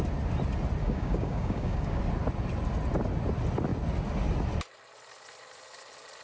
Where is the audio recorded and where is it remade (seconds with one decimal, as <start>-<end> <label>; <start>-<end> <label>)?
0.0-0.8 recorded; 0.8-2.0 remade; 2.0-6.2 recorded